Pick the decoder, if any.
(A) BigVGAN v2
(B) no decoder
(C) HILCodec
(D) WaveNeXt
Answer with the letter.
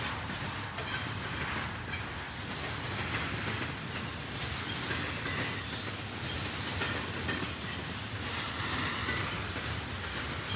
B